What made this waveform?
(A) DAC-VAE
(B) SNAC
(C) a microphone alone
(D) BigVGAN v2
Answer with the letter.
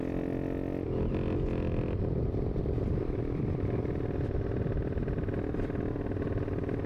C